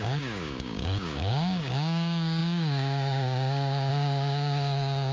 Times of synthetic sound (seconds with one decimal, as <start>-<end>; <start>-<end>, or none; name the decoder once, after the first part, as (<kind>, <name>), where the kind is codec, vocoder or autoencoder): 0.0-5.1 (codec, DAC)